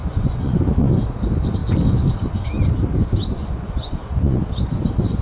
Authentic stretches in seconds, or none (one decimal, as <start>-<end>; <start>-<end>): 0.9-3.2; 4.4-5.2

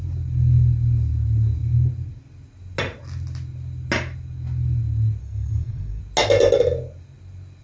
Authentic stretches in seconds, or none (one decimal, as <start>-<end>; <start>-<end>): 0.0-5.2; 6.0-7.6

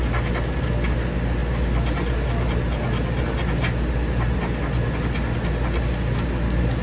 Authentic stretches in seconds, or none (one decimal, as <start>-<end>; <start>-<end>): 0.0-6.8

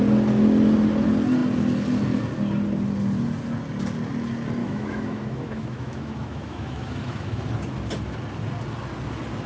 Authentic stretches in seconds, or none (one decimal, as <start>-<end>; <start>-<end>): 0.0-4.6; 7.4-9.5

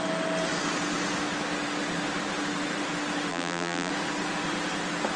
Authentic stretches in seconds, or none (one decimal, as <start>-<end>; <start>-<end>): 0.0-3.3; 3.9-5.2